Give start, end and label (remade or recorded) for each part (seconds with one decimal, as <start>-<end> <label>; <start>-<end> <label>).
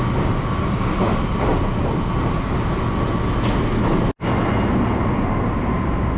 0.0-6.2 recorded